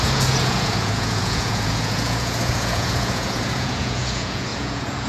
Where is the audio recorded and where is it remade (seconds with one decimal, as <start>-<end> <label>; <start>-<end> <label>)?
0.0-5.1 remade